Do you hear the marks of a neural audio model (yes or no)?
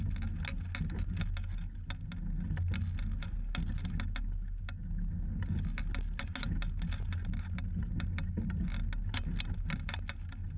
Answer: no